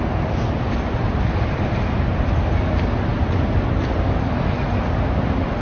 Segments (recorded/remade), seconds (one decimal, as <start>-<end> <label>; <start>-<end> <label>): 0.0-5.6 recorded